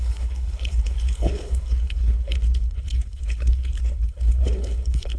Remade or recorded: remade